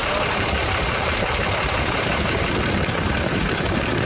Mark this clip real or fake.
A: fake